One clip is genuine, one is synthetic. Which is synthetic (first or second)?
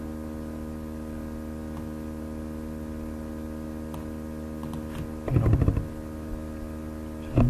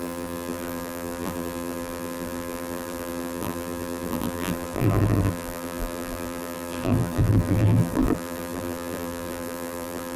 second